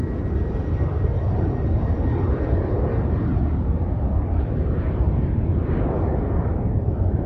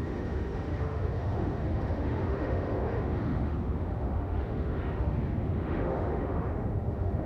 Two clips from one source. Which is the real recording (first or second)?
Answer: first